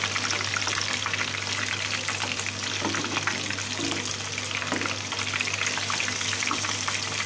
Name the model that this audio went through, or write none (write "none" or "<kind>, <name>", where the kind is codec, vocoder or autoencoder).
none